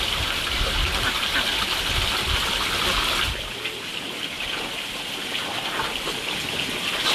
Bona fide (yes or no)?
yes